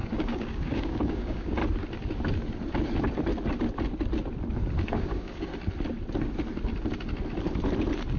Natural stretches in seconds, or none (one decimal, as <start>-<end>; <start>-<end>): 1.6-4.9; 5.5-8.2

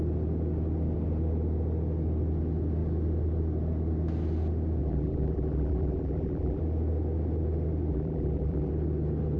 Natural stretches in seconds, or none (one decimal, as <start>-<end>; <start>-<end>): 0.0-4.8; 6.6-7.9; 8.7-9.4

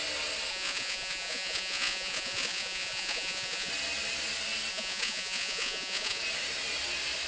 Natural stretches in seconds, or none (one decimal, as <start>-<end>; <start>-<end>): 0.0-0.5; 3.7-4.7; 6.2-7.3

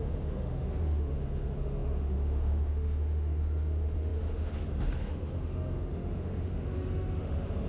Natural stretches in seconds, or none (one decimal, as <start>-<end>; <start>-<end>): none

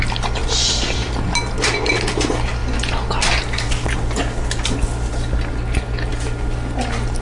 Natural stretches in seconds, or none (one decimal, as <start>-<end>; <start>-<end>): 0.0-0.4; 1.3-7.2

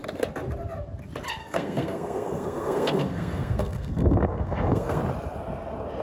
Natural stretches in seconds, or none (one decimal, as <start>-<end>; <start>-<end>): 0.0-1.4; 5.0-6.0

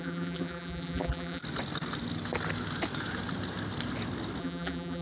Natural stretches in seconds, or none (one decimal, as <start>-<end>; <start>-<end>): 1.4-4.4

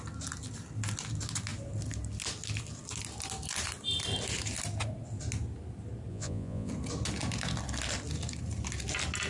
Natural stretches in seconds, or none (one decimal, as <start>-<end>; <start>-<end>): 0.0-6.1; 6.7-9.3